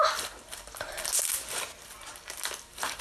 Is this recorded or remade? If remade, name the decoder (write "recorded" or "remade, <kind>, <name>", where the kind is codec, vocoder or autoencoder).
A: recorded